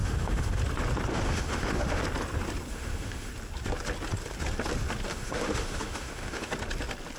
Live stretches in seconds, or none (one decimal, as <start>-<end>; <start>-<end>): 0.6-1.1; 2.0-2.7; 3.3-5.1; 6.5-7.2